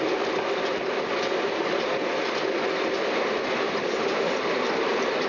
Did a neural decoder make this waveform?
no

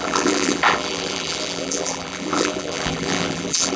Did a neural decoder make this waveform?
yes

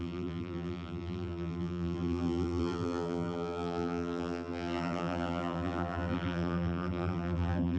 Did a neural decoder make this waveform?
yes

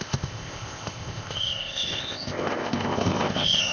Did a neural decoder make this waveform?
yes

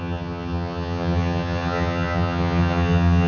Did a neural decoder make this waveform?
yes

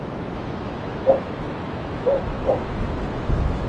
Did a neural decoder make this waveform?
yes